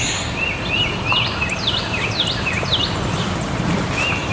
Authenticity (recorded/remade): recorded